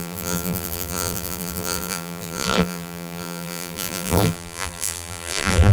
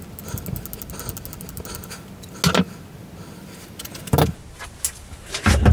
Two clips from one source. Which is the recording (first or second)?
second